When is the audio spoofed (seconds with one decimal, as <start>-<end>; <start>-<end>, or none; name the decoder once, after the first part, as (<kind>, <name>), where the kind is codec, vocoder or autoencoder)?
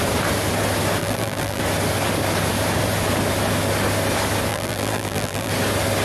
1.0-1.6 (vocoder, BigVGAN v2); 4.5-5.5